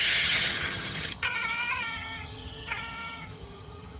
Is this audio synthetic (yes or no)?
yes